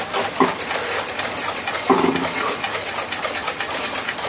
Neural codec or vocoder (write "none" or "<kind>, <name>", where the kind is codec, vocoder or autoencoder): none